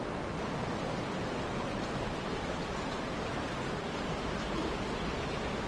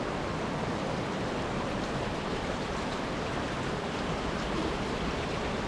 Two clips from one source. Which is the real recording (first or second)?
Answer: first